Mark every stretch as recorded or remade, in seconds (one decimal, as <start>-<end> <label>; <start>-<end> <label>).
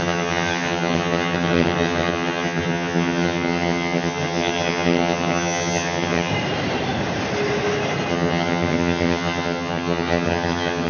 0.0-6.3 remade; 6.3-8.1 recorded; 8.1-10.9 remade